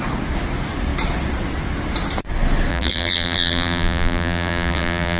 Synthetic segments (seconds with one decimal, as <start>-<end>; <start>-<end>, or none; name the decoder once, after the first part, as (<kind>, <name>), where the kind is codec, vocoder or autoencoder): 2.7-5.2 (vocoder, BigVGAN v2)